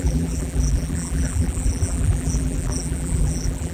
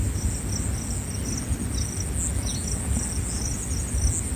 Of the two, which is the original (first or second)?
second